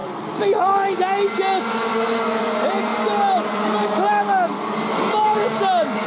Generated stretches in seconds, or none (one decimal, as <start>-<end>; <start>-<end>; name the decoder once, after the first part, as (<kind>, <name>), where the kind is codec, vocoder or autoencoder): none